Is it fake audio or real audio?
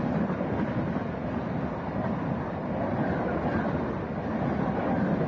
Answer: real